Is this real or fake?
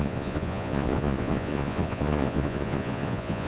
fake